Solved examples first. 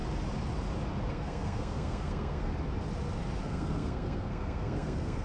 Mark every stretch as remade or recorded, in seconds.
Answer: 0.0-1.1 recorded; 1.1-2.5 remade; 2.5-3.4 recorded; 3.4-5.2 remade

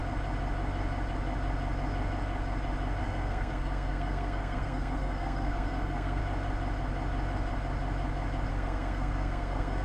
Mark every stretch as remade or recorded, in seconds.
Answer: 0.0-3.0 recorded; 3.0-6.2 remade; 6.2-8.5 recorded; 8.5-9.8 remade